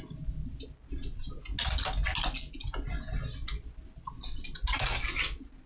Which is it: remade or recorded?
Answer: recorded